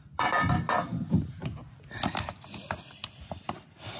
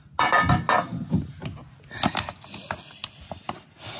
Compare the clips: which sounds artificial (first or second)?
first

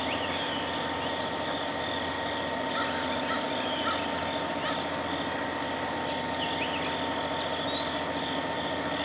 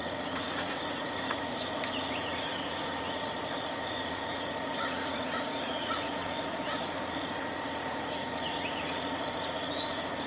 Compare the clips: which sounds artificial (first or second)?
second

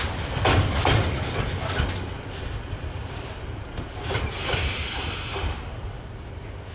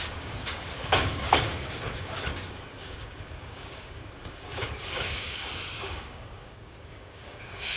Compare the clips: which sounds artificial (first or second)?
second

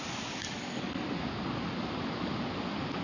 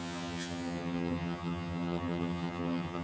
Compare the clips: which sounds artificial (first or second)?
second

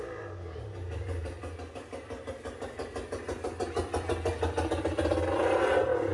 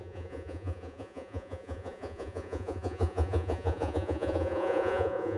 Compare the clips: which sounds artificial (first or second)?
second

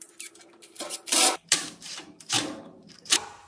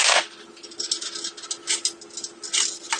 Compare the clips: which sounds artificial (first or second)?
first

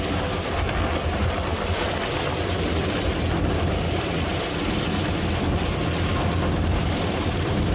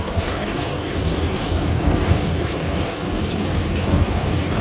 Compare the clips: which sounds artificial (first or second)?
second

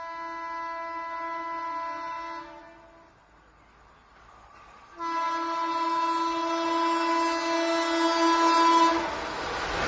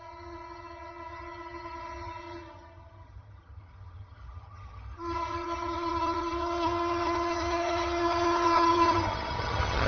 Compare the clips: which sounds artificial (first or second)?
second